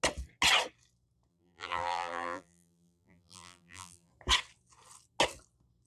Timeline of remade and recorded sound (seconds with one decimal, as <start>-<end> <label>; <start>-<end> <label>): 0.0-1.3 recorded; 1.3-4.1 remade; 4.1-5.9 recorded

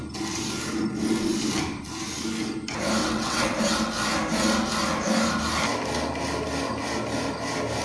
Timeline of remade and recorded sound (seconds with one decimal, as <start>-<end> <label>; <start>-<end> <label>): 0.0-3.0 recorded; 3.0-3.6 remade; 3.6-7.8 recorded

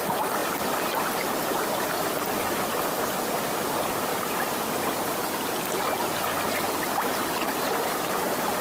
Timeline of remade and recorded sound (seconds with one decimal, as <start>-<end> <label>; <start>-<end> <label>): 0.0-8.6 recorded